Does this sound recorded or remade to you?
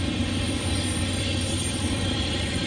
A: remade